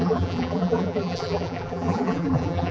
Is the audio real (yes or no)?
no